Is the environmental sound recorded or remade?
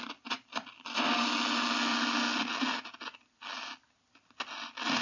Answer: recorded